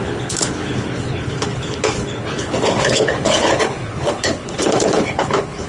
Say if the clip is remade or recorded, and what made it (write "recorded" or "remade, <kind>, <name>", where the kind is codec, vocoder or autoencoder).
remade, codec, HILCodec